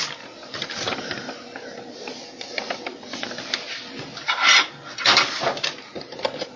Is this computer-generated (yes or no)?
no